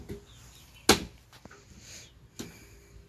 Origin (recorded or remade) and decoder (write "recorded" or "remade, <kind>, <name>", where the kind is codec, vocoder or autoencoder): recorded